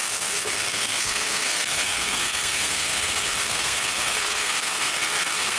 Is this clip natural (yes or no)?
no